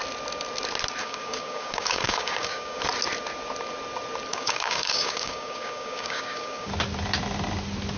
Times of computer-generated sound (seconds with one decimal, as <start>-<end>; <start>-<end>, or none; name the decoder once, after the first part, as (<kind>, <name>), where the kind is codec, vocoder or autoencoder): 1.0-2.8 (codec, DAC); 4.3-6.7